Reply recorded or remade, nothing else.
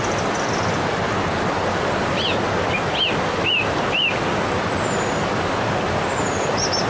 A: recorded